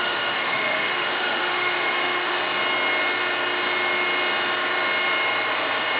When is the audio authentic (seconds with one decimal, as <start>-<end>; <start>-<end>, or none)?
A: 2.4-6.0